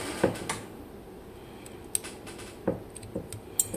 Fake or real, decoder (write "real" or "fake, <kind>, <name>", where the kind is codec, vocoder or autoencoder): real